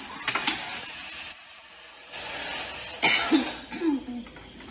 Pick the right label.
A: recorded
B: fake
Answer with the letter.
A